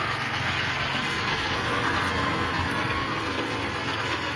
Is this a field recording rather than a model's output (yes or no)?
no